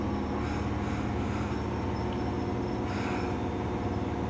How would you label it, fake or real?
real